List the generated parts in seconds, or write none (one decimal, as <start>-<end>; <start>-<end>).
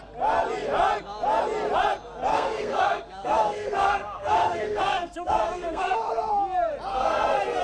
2.3-6.3; 6.9-7.6